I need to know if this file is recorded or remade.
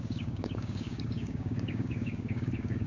remade